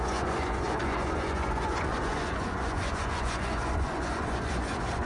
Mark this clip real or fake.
fake